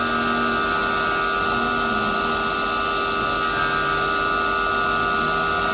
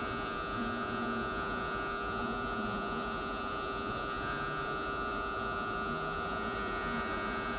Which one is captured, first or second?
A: first